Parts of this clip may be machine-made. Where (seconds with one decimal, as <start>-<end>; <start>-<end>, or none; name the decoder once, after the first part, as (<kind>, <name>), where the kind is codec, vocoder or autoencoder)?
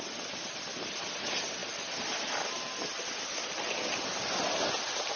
none